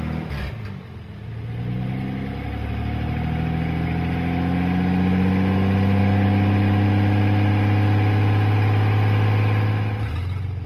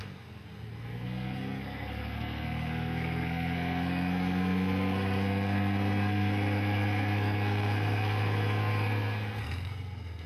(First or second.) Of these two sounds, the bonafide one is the first